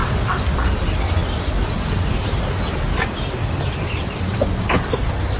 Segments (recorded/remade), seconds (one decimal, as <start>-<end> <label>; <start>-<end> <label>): 0.0-5.4 recorded